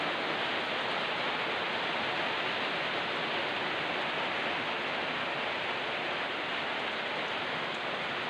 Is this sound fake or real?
real